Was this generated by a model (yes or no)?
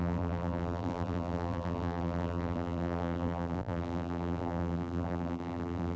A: yes